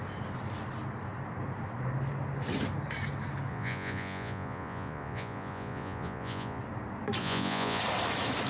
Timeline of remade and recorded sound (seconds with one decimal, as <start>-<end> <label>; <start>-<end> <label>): 0.0-3.5 recorded; 3.5-6.6 remade; 6.6-7.2 recorded; 7.2-7.8 remade; 7.8-8.5 recorded